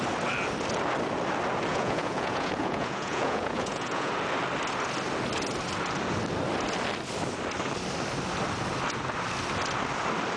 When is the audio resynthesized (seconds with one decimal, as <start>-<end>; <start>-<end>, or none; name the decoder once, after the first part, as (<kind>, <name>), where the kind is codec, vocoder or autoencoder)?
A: 1.7-4.1 (vocoder, Vocos)